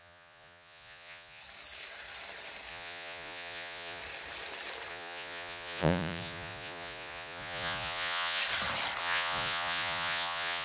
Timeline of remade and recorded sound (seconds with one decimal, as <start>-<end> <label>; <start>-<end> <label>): 0.0-1.4 remade; 1.4-2.7 recorded; 2.7-4.0 remade; 4.0-4.9 recorded; 4.9-8.4 remade; 8.4-9.0 recorded; 9.0-10.6 remade